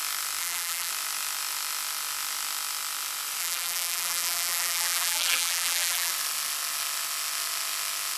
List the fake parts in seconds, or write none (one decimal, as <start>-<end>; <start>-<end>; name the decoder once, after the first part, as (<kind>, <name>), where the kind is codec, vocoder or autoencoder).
0.4-0.9 (vocoder, BigVGAN v2); 3.4-6.1